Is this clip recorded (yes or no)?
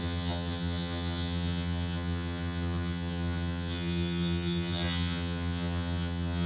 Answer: no